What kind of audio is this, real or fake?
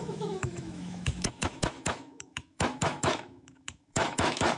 fake